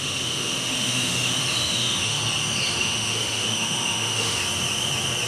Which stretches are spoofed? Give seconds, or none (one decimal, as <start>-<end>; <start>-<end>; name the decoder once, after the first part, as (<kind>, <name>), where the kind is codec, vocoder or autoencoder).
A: 0.0-2.2 (autoencoder, DAC-VAE); 2.7-4.4